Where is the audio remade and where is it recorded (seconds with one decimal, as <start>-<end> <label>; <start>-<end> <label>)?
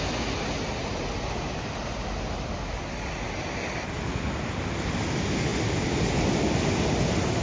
0.0-7.4 recorded